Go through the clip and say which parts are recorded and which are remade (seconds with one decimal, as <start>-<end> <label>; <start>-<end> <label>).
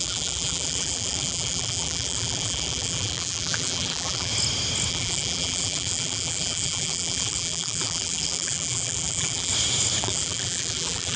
0.0-4.3 remade; 4.3-4.9 recorded; 4.9-9.5 remade; 9.5-10.0 recorded; 10.0-11.2 remade